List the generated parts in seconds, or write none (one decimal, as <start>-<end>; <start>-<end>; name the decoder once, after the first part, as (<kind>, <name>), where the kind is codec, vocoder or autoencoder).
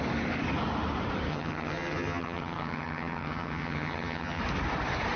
1.3-4.4 (vocoder, HiFi-GAN)